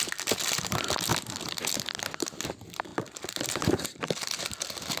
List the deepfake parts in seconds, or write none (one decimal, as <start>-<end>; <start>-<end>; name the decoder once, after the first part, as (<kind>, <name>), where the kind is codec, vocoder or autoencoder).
2.9-4.4 (vocoder, BigVGAN v2)